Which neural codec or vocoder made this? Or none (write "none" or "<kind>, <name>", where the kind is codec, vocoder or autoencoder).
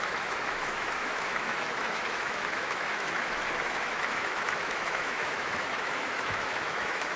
autoencoder, DAC-VAE